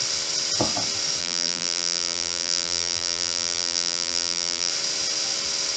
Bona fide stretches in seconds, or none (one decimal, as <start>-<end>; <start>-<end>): 0.0-1.2; 4.7-5.8